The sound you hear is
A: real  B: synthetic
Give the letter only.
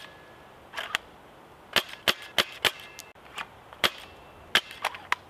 A